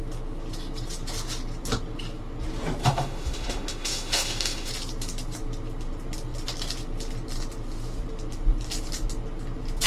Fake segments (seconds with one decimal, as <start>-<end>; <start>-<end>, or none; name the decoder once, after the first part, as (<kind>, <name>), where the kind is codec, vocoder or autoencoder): 2.8-4.7 (autoencoder, DAC-VAE)